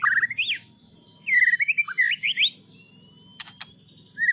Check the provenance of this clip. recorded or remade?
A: recorded